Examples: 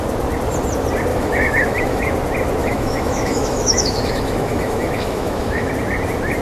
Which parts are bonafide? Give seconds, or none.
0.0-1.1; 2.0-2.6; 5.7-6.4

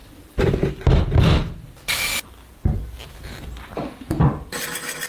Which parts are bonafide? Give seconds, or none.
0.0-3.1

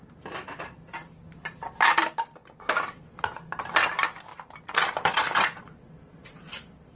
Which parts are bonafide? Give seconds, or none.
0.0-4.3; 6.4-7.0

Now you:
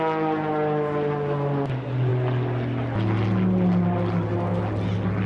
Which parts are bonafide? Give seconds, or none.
0.0-5.3

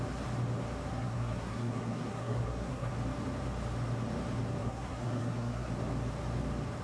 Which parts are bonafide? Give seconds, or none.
0.0-0.9; 2.9-4.6; 5.7-6.8

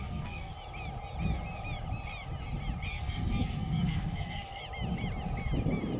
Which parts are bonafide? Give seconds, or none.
0.5-2.9; 4.6-6.0